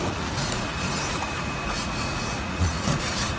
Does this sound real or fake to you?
fake